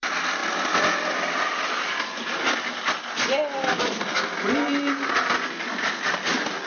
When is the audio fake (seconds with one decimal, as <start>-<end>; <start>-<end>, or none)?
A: 0.0-0.4; 3.8-4.7; 5.6-6.7